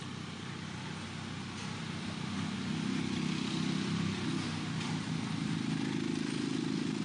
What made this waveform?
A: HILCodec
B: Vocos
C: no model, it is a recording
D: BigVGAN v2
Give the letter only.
C